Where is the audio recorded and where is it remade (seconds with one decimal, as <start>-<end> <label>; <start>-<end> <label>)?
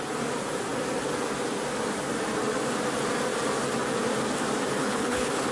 0.0-4.8 recorded; 4.8-5.5 remade